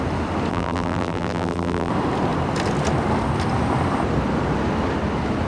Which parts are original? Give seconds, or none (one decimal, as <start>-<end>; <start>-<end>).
0.0-0.5; 1.9-5.5